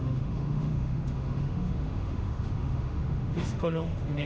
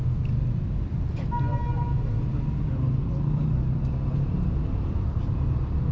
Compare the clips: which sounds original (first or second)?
second